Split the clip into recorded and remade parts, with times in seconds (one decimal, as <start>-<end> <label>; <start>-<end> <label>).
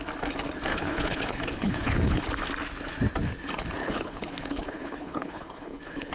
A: 0.0-0.7 recorded; 0.7-2.2 remade; 2.2-3.8 recorded; 3.8-6.1 remade